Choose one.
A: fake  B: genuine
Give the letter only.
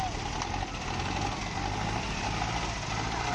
B